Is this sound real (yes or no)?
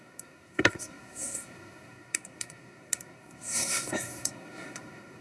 no